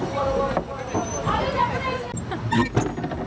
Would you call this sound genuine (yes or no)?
yes